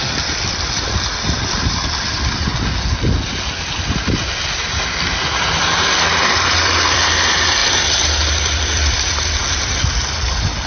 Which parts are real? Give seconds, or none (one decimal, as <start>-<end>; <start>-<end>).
2.5-3.4